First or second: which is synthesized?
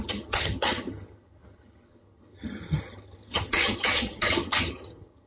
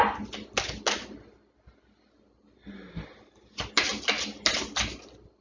first